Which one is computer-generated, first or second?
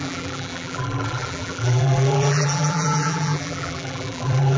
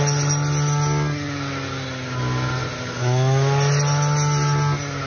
first